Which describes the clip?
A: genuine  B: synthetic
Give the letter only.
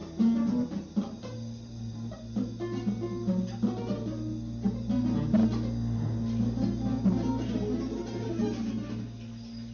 A